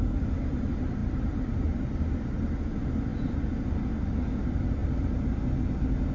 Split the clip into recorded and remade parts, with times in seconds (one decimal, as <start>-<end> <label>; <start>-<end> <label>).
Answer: 0.0-1.0 recorded; 1.0-1.9 remade; 1.9-6.1 recorded